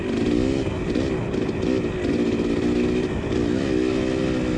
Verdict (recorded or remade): recorded